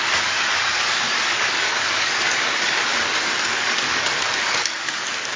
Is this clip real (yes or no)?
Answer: no